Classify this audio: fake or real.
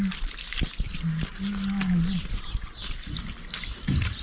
real